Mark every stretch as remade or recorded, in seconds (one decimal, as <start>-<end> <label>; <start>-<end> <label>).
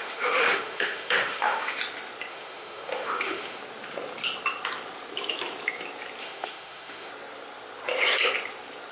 0.0-1.8 remade; 1.8-2.3 recorded; 2.3-3.6 remade; 3.6-6.2 recorded; 6.2-7.1 remade; 7.1-8.9 recorded